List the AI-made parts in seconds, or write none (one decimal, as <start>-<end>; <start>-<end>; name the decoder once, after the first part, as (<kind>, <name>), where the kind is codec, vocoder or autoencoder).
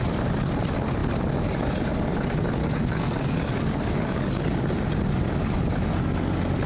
2.6-4.6 (codec, DAC)